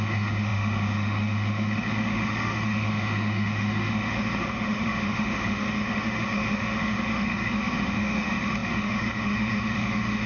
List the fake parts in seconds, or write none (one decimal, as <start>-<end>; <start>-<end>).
0.0-10.3